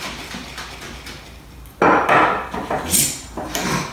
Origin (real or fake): real